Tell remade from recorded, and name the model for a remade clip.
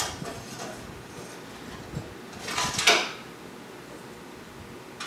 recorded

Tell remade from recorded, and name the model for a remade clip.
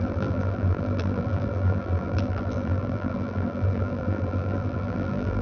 remade, vocoder, BigVGAN v2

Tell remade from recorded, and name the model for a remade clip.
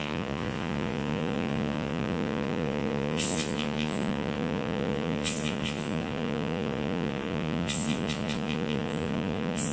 remade, vocoder, Vocos